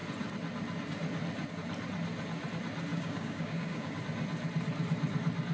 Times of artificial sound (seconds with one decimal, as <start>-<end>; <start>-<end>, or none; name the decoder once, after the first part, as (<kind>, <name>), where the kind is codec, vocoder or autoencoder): 2.9-4.0 (codec, DAC)